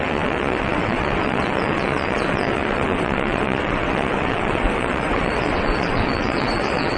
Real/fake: fake